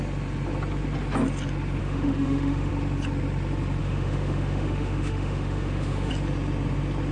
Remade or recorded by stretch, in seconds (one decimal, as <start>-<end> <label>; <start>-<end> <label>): 0.0-1.8 recorded; 1.8-2.7 remade; 2.7-3.8 recorded; 3.8-6.1 remade; 6.1-7.1 recorded